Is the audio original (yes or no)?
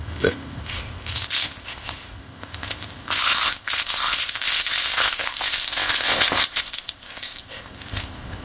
no